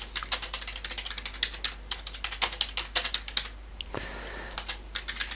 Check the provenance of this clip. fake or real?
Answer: real